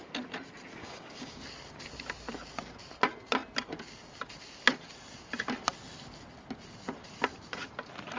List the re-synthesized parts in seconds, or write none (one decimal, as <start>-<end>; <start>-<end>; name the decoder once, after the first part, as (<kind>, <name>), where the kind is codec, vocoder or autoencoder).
0.8-1.4 (codec, DAC)